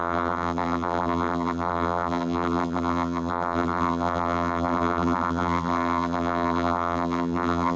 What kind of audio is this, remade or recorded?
remade